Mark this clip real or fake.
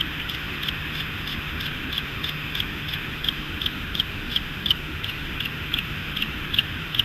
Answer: fake